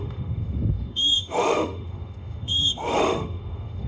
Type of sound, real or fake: fake